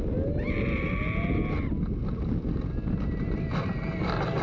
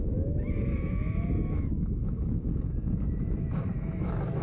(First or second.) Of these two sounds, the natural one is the first